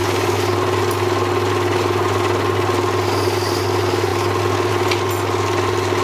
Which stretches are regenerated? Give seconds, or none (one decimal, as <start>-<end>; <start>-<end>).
none